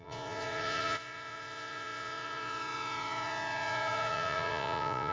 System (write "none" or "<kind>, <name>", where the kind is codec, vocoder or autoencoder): vocoder, Vocos